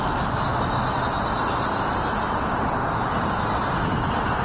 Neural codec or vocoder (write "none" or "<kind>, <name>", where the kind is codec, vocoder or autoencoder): none